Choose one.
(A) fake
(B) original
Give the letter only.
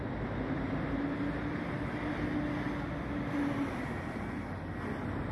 B